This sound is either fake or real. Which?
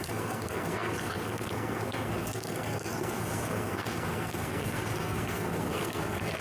fake